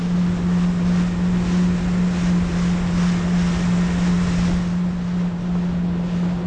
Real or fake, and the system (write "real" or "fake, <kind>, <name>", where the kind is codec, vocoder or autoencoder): real